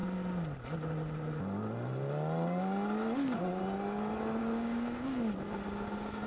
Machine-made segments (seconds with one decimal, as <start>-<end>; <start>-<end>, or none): 4.4-5.2